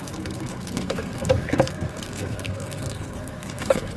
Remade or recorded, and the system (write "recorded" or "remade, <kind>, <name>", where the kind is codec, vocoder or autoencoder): remade, codec, SNAC